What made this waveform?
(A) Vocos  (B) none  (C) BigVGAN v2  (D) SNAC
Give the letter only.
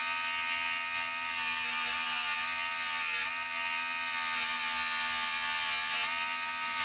B